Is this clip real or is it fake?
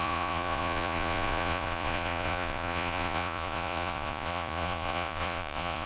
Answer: fake